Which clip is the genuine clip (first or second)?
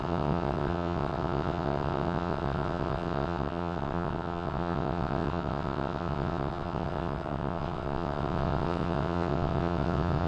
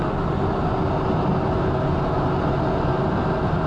second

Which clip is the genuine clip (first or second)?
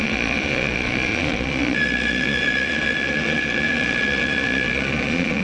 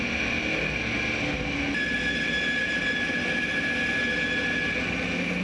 second